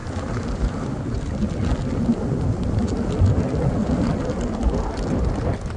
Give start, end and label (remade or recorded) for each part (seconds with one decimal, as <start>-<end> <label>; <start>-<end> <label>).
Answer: 0.0-5.8 recorded